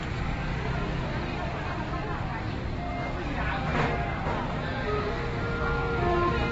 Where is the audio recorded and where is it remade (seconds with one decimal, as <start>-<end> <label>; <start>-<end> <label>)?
0.0-1.3 recorded; 1.3-1.9 remade; 1.9-6.5 recorded